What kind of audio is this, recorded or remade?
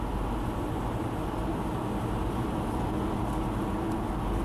recorded